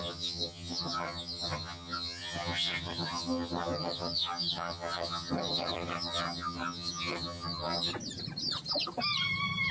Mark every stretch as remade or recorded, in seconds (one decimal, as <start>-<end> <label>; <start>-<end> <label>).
0.0-7.9 remade; 7.9-9.7 recorded